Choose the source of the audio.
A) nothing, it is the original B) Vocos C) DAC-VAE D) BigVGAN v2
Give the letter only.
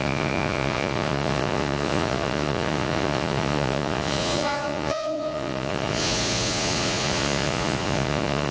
B